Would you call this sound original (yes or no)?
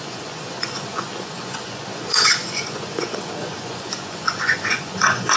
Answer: no